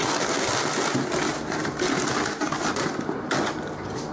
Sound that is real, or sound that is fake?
real